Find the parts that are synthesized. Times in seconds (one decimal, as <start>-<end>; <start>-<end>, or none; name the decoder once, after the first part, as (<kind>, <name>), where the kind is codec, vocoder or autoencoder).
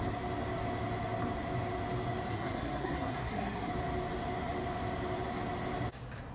2.3-3.7 (codec, SNAC)